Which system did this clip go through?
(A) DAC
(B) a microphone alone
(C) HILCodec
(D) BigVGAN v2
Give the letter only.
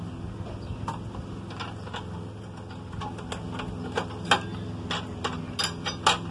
B